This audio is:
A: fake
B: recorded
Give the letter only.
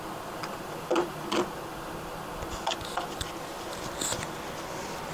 B